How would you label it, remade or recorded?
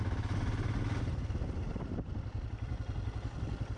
recorded